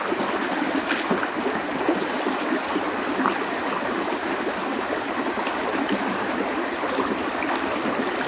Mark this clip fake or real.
real